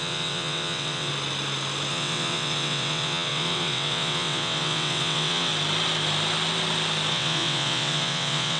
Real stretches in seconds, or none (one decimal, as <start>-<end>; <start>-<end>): 1.1-1.9; 5.5-7.1